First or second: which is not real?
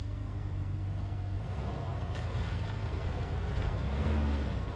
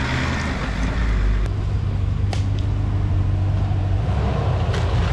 first